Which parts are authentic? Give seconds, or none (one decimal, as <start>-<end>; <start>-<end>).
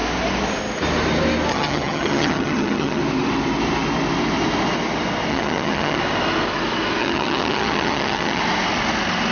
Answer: 0.0-1.5; 3.0-5.3; 6.0-7.0; 8.4-9.3